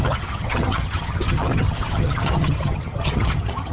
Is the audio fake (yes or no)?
yes